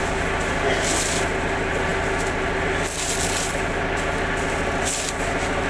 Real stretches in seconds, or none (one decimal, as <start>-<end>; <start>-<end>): 0.0-5.7